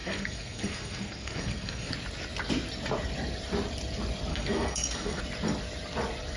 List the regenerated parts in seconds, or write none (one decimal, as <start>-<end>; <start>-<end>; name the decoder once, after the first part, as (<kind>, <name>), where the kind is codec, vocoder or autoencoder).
0.0-1.9 (codec, SNAC); 4.3-5.2